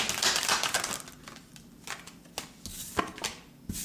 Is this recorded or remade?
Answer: recorded